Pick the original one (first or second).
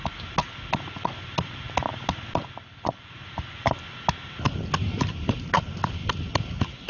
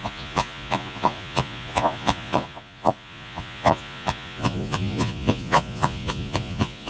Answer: first